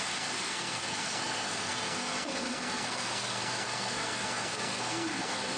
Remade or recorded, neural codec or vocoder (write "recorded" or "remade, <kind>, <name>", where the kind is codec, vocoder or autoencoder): remade, codec, SNAC